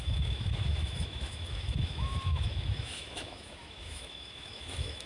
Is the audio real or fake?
fake